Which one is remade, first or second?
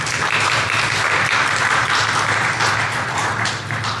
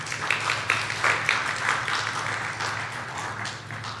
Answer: first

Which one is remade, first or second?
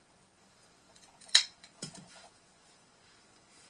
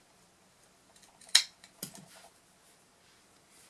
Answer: first